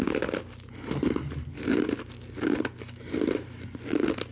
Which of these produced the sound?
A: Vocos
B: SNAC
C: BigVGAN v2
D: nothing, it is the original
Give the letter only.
D